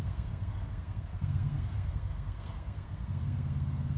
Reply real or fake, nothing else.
fake